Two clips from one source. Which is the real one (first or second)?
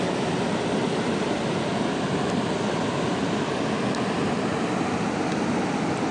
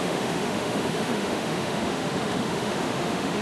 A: first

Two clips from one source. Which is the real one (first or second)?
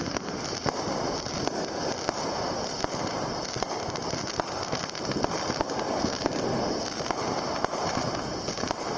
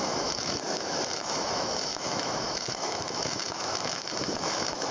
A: first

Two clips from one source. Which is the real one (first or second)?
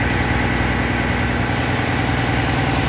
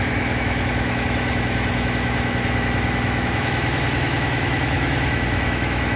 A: first